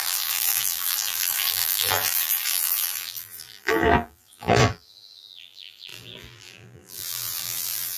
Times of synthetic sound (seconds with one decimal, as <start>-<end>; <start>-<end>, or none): 0.0-8.0